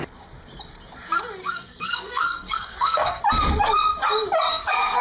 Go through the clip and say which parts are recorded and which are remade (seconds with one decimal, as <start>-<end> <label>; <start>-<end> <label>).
0.0-1.4 recorded; 1.4-3.2 remade; 3.2-4.5 recorded; 4.5-5.0 remade